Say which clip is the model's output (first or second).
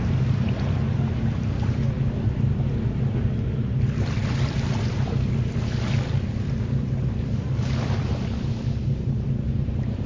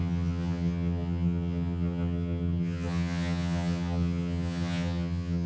second